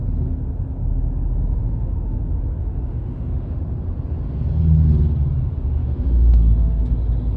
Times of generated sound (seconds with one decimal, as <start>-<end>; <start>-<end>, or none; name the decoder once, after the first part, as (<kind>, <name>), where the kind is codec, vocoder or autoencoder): 1.6-2.2 (autoencoder, DAC-VAE); 2.6-3.6; 5.8-6.9